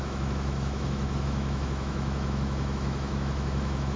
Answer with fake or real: fake